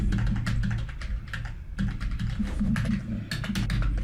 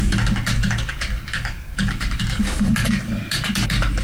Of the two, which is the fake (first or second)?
second